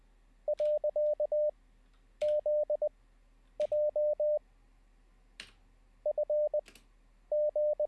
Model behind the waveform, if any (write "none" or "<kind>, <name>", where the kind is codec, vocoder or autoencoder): none